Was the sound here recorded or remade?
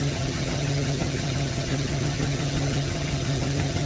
remade